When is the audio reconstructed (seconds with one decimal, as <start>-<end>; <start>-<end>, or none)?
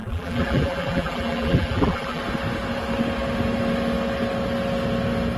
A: 0.0-2.2